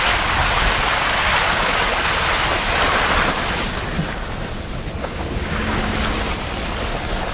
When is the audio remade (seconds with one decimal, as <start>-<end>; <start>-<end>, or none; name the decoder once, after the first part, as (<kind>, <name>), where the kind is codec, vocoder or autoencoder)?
5.0-5.9 (codec, DAC)